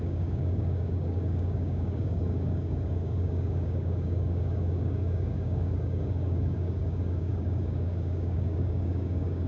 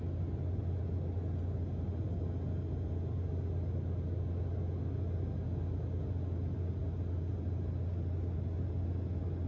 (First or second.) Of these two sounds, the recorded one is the second